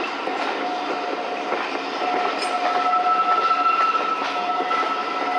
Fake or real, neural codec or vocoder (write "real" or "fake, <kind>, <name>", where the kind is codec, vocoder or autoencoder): real